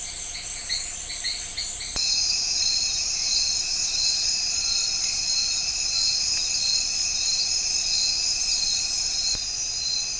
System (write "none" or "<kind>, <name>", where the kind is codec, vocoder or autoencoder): none